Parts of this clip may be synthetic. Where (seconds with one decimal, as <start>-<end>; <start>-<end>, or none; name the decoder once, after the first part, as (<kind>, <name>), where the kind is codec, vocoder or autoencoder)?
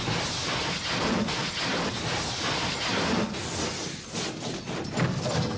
none